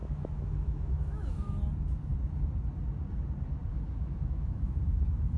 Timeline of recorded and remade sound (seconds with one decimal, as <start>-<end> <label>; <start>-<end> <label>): 0.0-1.6 remade; 1.6-3.7 recorded; 3.7-4.8 remade; 4.8-5.4 recorded